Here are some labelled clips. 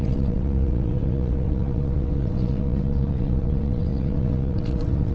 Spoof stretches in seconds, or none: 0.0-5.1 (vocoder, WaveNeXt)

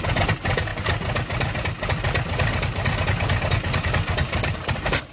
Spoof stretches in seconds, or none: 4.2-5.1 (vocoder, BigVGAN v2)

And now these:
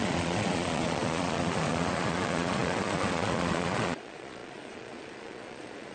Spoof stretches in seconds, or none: 0.0-5.9 (vocoder, Vocos)

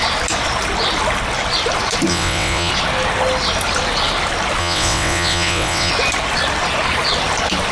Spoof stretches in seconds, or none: 2.1-2.7 (vocoder, WaveNeXt); 4.6-5.9

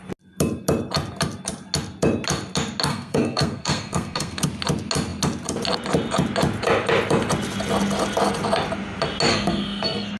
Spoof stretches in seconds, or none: 2.9-4.4 (codec, SNAC); 9.3-10.2